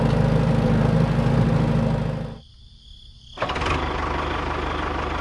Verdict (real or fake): real